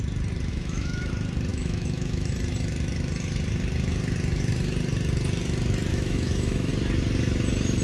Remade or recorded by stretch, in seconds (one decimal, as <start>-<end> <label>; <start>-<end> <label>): 0.0-0.5 recorded; 0.5-1.1 remade; 1.1-1.5 recorded; 1.5-2.3 remade; 2.3-5.9 recorded; 5.9-6.7 remade; 6.7-7.8 recorded